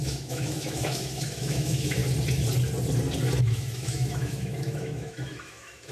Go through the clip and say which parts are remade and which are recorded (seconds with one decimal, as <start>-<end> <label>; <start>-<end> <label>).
0.0-2.0 remade; 2.0-3.4 recorded; 3.4-5.9 remade